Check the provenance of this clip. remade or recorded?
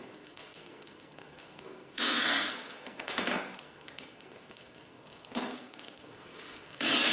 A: remade